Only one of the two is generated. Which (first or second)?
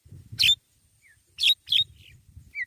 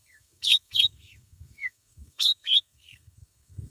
second